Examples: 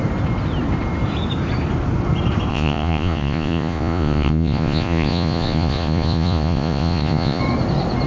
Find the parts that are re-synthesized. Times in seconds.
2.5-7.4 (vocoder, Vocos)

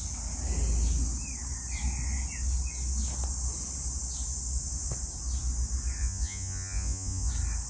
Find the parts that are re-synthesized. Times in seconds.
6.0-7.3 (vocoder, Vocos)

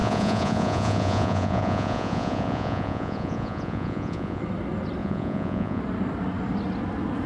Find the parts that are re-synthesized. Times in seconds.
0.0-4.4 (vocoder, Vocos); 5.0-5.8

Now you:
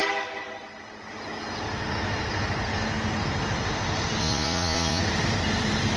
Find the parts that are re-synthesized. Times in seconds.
4.2-5.0 (vocoder, Vocos)

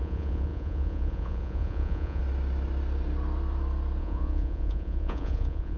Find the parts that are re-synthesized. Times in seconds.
0.0-2.2 (vocoder, Vocos); 4.0-5.8

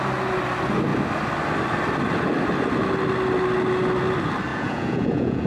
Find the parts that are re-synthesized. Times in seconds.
4.5-5.5 (vocoder, Vocos)